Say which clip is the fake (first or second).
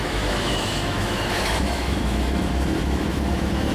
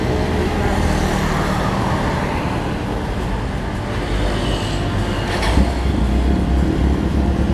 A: first